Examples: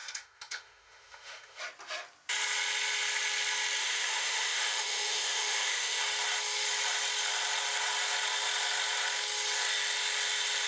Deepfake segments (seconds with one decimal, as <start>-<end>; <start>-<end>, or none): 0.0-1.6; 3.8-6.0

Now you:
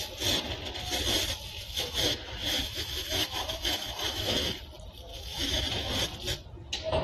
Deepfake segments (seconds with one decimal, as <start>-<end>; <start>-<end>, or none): 1.5-4.5; 5.1-5.6

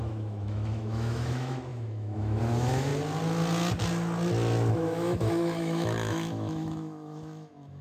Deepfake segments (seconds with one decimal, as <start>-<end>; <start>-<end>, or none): 0.0-2.9; 4.7-7.8

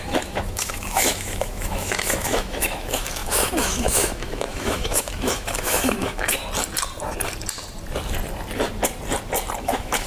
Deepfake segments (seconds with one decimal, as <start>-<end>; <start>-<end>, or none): 0.0-6.4; 9.6-10.1

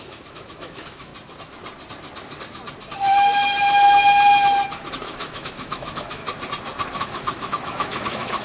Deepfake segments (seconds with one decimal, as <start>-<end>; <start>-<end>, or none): 0.0-1.1; 4.9-6.2; 7.0-8.4

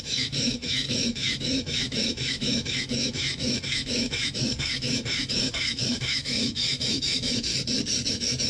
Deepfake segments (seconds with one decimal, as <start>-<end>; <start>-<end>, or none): 0.0-7.5; 8.1-8.5

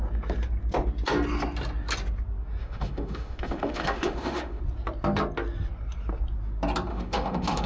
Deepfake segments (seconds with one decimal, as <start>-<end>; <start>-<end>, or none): 2.6-4.6; 6.9-7.7

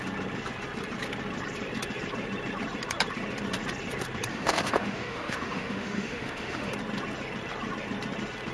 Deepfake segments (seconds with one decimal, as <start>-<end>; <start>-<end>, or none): 4.3-6.7